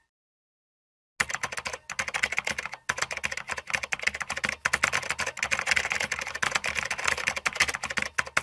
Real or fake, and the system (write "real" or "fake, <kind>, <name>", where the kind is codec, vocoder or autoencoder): real